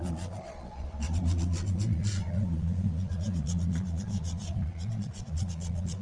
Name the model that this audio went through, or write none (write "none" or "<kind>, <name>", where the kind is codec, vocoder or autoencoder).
vocoder, Vocos